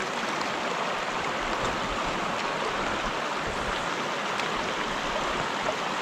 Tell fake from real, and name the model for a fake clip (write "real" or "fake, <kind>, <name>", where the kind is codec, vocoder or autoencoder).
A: real